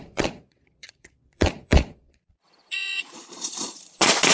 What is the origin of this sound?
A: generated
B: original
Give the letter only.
A